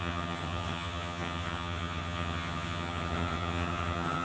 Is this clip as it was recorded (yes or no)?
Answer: no